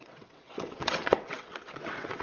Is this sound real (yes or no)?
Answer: no